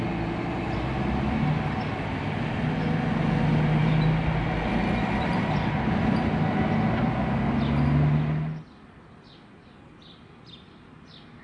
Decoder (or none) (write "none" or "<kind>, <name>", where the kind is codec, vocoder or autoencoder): none